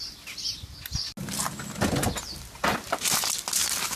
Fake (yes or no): no